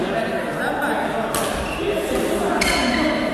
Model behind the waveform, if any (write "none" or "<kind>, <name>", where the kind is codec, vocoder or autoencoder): none